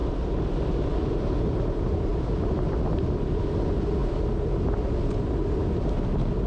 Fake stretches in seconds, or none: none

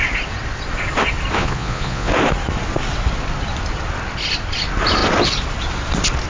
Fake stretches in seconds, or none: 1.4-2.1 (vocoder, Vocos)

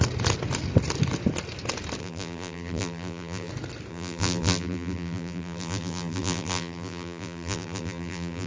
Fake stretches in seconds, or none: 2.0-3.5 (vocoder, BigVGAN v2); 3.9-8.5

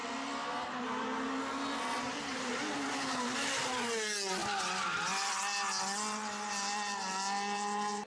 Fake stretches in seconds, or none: 0.0-1.4 (vocoder, BigVGAN v2); 4.4-5.4